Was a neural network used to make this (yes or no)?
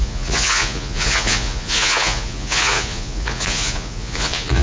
yes